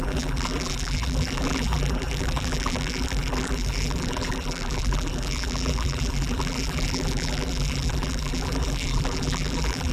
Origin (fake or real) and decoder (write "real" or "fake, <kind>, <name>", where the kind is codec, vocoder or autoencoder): fake, vocoder, BigVGAN v2